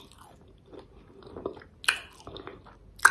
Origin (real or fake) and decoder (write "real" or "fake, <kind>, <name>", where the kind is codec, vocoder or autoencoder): real